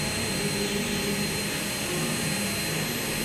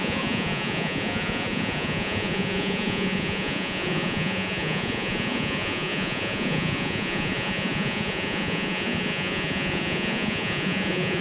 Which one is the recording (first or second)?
first